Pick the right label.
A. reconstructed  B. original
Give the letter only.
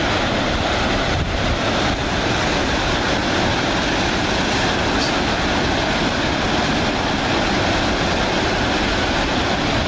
B